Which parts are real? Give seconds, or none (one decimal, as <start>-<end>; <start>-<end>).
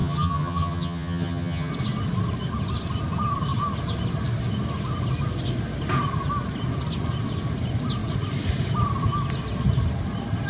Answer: 1.7-10.5